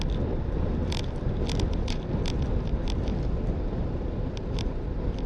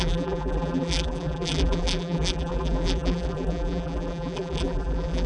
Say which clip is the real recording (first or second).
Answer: first